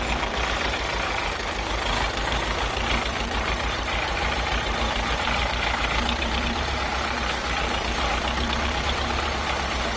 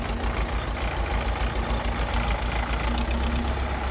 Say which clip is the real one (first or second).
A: second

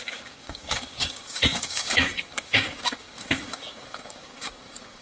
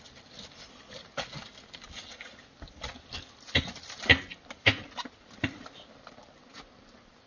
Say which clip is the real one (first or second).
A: second